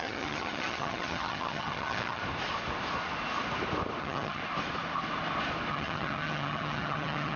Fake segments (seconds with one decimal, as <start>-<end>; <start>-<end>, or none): 0.0-2.2; 4.0-4.4; 5.7-7.4